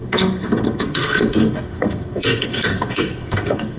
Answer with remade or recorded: remade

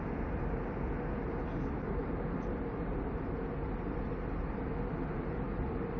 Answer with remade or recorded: recorded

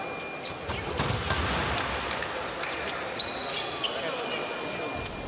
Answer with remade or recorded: recorded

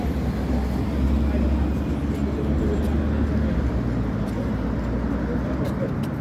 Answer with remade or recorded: recorded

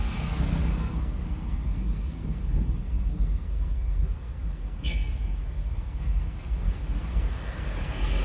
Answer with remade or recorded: remade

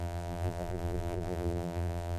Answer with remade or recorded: remade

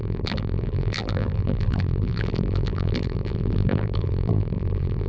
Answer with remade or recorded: remade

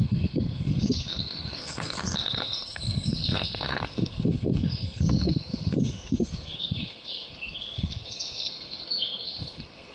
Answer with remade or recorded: remade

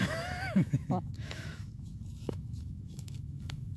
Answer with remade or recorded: remade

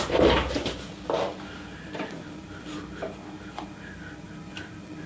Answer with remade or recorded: recorded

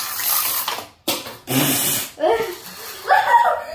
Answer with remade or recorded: recorded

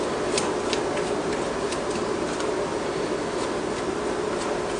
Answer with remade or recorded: recorded